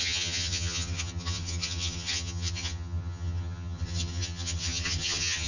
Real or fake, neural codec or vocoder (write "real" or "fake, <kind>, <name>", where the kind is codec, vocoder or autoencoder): fake, vocoder, HiFi-GAN